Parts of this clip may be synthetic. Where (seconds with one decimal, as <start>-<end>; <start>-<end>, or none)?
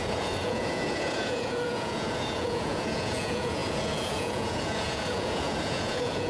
0.0-6.3